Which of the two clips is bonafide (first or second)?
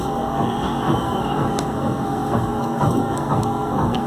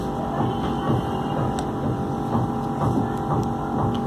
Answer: second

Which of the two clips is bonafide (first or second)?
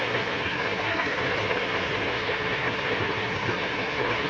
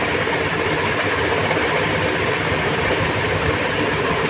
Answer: second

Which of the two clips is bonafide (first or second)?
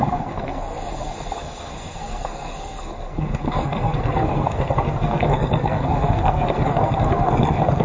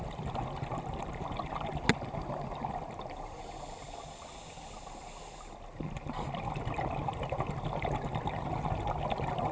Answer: second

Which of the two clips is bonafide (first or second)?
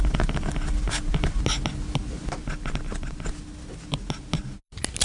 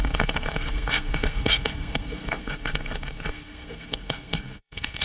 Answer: first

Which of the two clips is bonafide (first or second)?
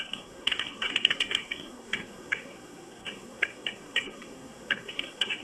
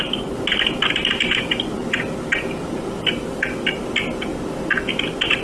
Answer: second